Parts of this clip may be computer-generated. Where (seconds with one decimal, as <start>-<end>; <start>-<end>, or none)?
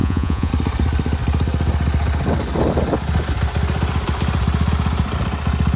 0.0-0.5